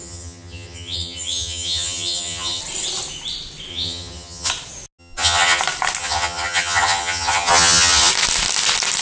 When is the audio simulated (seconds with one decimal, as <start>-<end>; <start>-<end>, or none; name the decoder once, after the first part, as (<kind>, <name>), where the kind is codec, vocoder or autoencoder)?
0.0-2.6 (vocoder, HiFi-GAN); 3.7-4.5; 5.0-5.6; 6.0-8.1